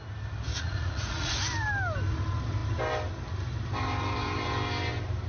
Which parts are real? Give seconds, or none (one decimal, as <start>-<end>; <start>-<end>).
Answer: 0.0-0.5; 1.3-5.3